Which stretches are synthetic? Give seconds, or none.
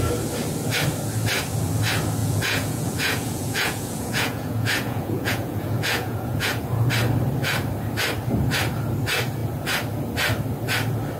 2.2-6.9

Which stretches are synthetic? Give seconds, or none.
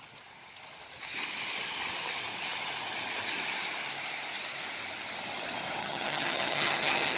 5.8-7.2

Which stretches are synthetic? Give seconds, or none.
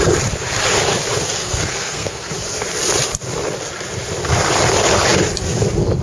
1.4-2.3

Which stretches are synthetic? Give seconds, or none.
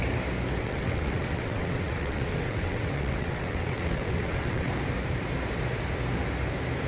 0.6-4.7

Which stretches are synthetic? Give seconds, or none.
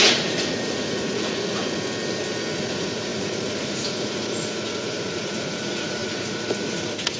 0.0-1.6; 2.6-7.2